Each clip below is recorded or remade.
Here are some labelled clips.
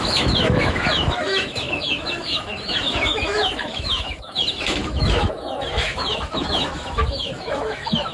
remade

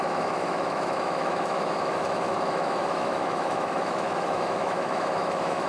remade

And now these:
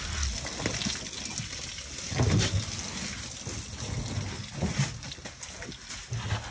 recorded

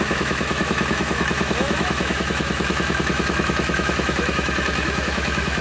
remade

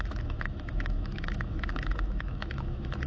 remade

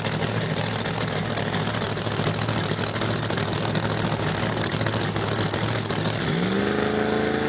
recorded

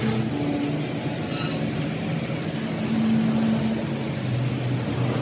recorded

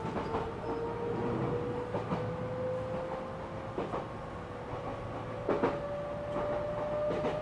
recorded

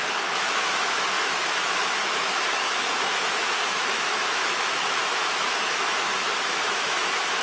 remade